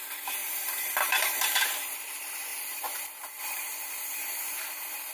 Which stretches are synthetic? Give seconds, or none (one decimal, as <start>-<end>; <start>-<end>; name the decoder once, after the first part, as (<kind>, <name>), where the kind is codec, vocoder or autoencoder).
0.4-1.4 (vocoder, BigVGAN v2); 2.5-4.4